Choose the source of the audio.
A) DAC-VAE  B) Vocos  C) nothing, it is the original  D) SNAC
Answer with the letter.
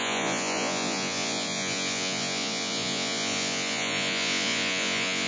B